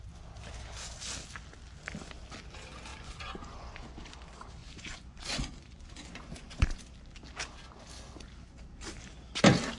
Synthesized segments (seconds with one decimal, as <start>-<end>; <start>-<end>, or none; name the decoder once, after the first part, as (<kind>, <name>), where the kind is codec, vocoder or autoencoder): 2.9-4.1 (vocoder, Vocos); 4.6-6.8